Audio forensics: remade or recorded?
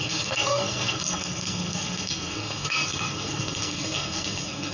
remade